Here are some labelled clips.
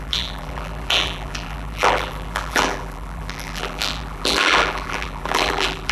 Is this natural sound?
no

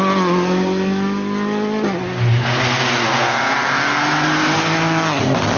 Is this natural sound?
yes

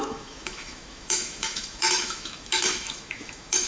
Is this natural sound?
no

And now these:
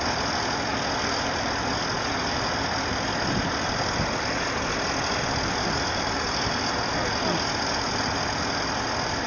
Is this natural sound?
yes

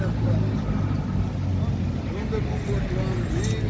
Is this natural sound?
yes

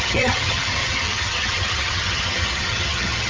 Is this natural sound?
no